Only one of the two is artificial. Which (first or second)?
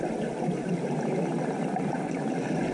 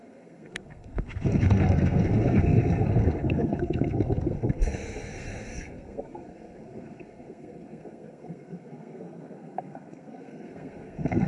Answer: second